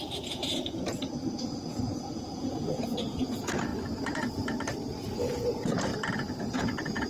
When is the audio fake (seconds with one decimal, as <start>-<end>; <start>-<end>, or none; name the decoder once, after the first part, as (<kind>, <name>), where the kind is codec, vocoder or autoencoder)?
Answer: 0.0-3.7 (vocoder, Vocos); 5.2-5.9; 6.4-7.1